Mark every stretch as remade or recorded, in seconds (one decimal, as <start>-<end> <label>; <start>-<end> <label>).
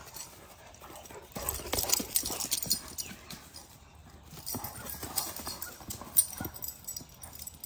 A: 0.0-7.7 recorded